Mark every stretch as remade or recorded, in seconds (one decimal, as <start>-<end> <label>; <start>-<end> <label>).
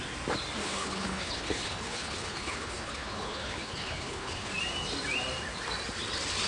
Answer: 0.0-0.6 recorded; 0.6-4.5 remade; 4.5-6.5 recorded